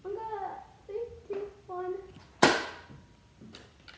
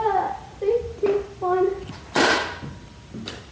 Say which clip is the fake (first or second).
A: second